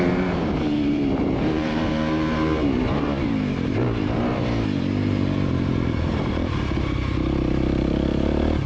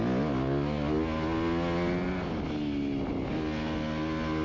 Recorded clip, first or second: second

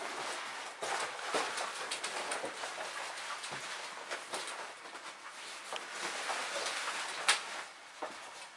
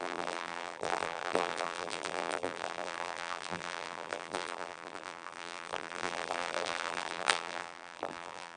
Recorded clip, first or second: first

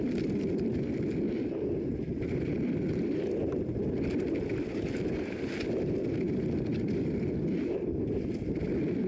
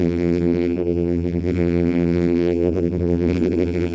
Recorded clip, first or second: first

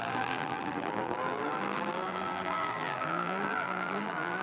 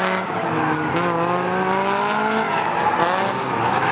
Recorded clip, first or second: second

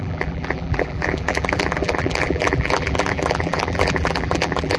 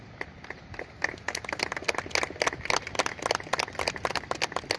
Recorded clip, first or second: second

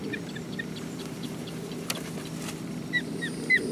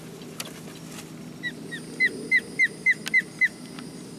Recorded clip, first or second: second